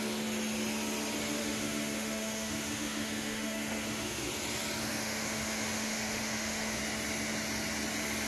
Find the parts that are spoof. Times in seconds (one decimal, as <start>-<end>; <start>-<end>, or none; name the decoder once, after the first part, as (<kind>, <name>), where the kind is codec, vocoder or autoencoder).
1.4-4.3 (autoencoder, DAC-VAE); 4.8-6.8